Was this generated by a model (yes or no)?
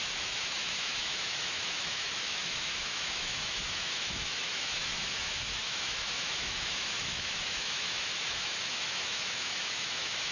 yes